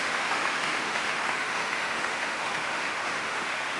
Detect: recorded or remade remade